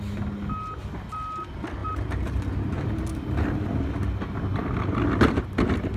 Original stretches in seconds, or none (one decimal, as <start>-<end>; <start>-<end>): 0.0-6.0